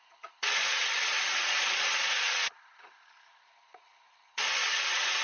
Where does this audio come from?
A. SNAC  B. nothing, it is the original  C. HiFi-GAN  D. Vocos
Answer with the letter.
D